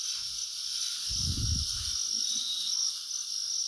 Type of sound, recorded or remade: recorded